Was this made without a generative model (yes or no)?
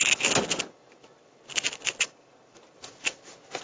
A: yes